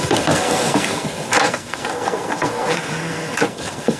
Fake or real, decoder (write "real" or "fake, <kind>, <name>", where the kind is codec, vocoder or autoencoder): fake, codec, SNAC